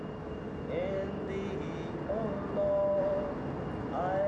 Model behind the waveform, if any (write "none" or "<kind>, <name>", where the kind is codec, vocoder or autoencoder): none